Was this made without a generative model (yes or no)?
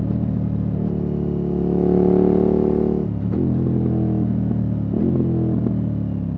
yes